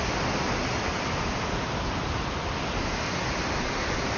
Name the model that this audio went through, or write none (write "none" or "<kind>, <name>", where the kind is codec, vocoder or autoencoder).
none